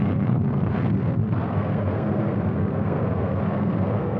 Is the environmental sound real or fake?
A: fake